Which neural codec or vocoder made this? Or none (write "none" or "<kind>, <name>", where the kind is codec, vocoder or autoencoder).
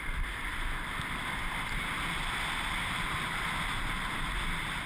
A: none